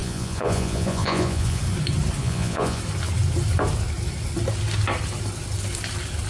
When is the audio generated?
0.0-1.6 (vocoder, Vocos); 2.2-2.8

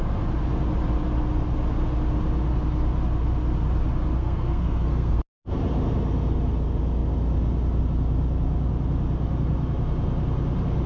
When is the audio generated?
4.2-5.2 (codec, SNAC)

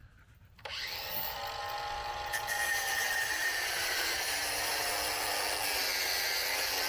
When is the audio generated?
0.0-0.8 (vocoder, BigVGAN v2); 2.7-4.9

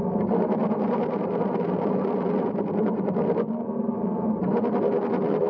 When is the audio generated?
none

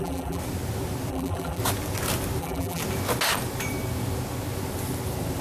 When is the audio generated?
0.0-0.4 (vocoder, BigVGAN v2); 1.1-1.6; 2.4-2.8